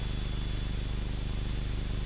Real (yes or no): yes